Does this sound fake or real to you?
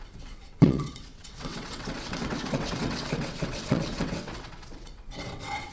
fake